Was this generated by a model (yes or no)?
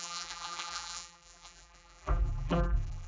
yes